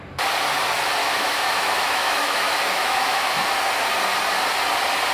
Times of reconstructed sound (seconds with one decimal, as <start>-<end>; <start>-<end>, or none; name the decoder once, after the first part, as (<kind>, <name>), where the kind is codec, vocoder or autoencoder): 1.0-3.4 (autoencoder, DAC-VAE)